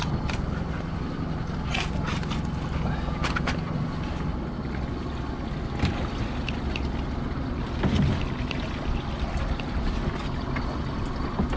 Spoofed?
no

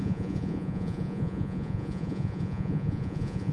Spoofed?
yes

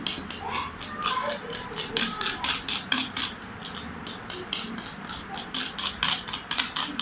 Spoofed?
no